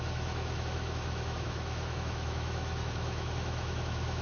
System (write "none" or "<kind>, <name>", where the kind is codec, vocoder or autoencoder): autoencoder, DAC-VAE